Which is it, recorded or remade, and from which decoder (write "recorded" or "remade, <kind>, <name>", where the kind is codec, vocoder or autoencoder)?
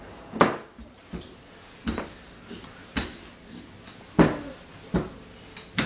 recorded